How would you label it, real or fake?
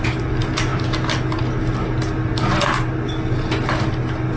real